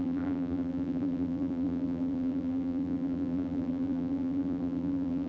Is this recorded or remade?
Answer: remade